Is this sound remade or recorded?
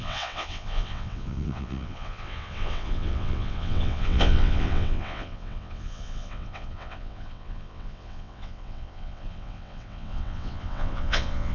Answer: remade